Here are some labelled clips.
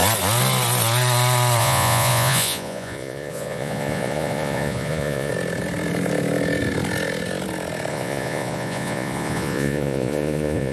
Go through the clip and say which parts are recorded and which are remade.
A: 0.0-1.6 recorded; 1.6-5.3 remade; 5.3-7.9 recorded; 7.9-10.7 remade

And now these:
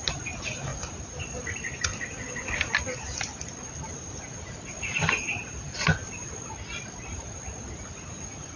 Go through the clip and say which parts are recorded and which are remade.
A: 0.0-8.6 recorded

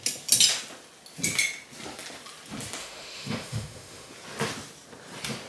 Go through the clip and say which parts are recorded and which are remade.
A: 0.0-2.8 recorded; 2.8-4.1 remade; 4.1-5.5 recorded

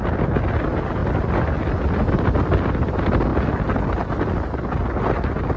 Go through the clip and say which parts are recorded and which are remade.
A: 0.0-5.6 recorded

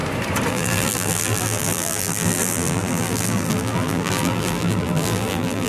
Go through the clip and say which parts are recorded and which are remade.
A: 0.0-0.5 recorded; 0.5-5.7 remade

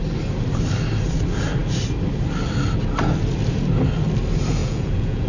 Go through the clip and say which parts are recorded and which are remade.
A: 0.0-4.6 recorded; 4.6-5.3 remade

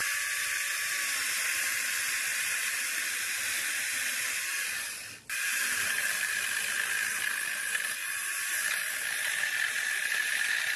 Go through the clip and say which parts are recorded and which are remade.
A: 0.0-0.9 remade; 0.9-2.3 recorded; 2.3-6.5 remade; 6.5-10.8 recorded

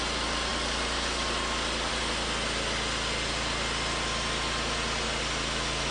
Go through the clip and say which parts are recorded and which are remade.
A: 0.0-5.9 recorded